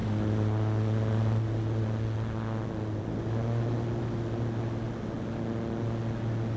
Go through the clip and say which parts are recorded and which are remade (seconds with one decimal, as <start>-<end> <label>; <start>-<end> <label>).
0.0-6.6 recorded